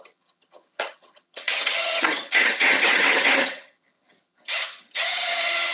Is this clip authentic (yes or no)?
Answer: no